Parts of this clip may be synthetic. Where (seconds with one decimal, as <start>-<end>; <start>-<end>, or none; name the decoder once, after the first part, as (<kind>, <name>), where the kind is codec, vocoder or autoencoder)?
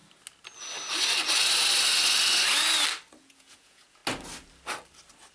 3.2-4.0 (vocoder, Vocos)